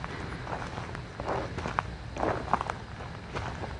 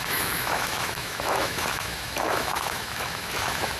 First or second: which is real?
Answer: first